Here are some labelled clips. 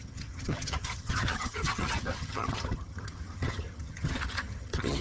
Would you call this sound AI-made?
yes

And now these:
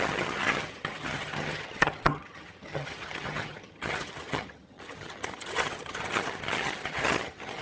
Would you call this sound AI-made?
yes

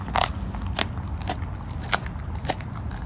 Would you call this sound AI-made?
no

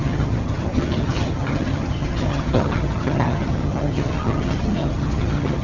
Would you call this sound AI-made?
yes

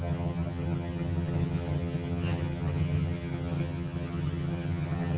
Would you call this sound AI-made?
yes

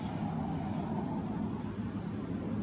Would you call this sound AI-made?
no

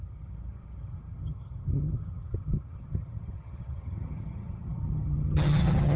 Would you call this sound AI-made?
yes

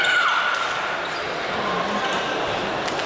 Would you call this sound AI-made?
no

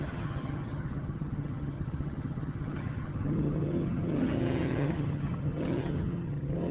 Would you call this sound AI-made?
yes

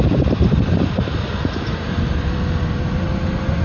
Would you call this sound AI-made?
no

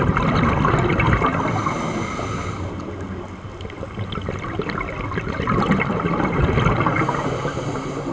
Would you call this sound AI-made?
no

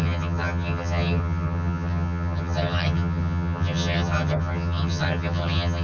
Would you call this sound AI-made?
yes